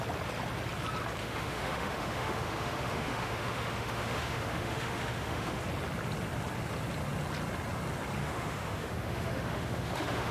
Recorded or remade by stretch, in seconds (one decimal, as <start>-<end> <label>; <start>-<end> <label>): 0.0-1.2 recorded; 1.2-5.6 remade; 5.6-8.2 recorded; 8.2-10.3 remade